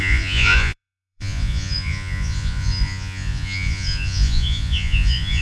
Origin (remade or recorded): remade